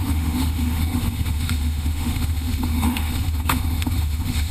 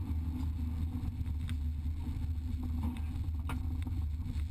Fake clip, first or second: first